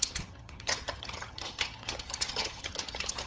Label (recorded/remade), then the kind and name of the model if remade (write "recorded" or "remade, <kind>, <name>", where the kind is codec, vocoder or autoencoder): remade, vocoder, HiFi-GAN